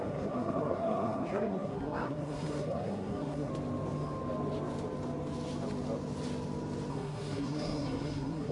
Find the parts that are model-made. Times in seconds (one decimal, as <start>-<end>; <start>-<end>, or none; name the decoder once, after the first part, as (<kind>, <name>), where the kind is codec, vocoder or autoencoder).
0.0-3.5 (codec, SNAC); 6.9-8.5